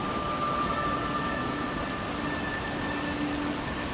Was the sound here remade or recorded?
recorded